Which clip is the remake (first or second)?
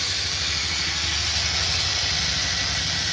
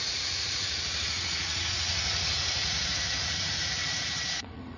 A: second